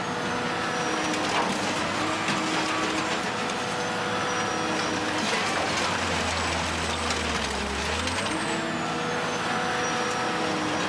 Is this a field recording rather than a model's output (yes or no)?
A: yes